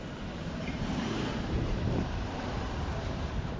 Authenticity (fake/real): fake